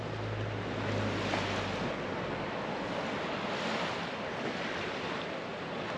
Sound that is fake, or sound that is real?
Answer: real